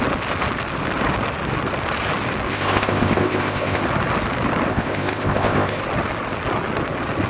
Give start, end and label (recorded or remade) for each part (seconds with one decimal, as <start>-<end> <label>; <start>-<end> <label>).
0.0-2.5 recorded; 2.5-3.8 remade; 3.8-4.7 recorded; 4.7-5.8 remade; 5.8-7.3 recorded